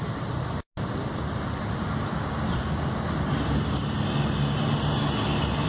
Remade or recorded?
recorded